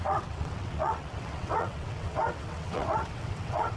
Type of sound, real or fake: fake